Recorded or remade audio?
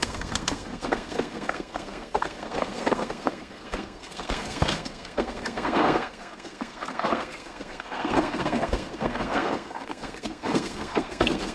remade